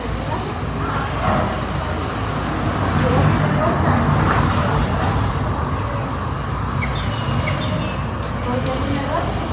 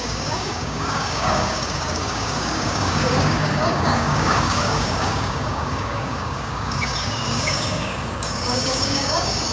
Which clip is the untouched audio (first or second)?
first